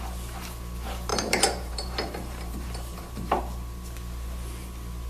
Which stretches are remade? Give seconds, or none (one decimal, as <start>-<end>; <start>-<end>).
1.1-3.4